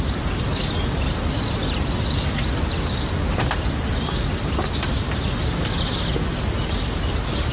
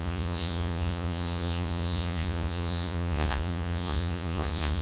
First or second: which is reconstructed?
second